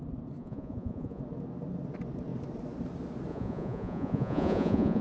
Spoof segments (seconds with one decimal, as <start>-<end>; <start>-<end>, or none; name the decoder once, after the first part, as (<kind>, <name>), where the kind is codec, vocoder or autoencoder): 0.4-1.2 (vocoder, Vocos); 3.3-5.0